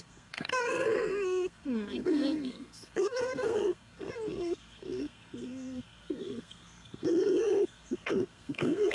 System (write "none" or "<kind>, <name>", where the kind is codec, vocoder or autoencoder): codec, SNAC